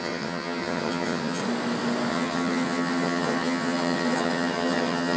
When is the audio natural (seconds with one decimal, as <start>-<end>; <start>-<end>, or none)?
1.4-2.1